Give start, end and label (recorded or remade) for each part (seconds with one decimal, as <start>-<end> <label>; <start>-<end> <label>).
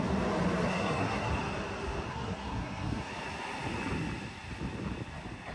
0.0-0.7 recorded; 0.7-1.3 remade; 1.3-2.1 recorded; 2.1-3.1 remade; 3.1-5.5 recorded